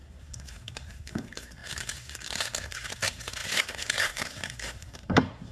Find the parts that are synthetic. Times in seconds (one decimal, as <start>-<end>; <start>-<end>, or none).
0.0-5.5